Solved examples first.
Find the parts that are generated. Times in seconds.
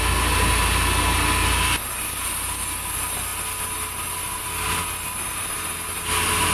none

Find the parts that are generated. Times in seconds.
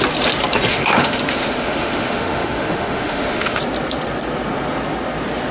0.7-3.6 (autoencoder, DAC-VAE)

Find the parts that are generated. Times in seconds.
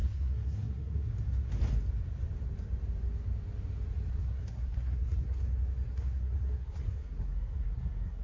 0.0-1.1 (codec, SNAC); 4.1-5.4; 5.9-8.2